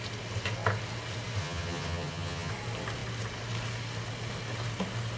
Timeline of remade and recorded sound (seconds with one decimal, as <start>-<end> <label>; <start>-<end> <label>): 0.0-1.4 recorded; 1.4-2.5 remade; 2.5-5.2 recorded